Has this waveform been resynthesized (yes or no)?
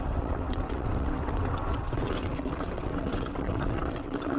yes